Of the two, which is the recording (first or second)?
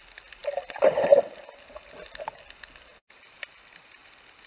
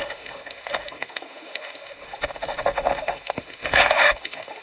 first